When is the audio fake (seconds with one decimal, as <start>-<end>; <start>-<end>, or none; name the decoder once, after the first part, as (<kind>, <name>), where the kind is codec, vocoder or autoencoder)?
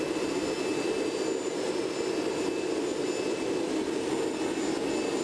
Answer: none